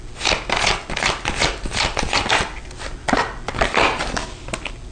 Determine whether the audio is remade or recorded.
recorded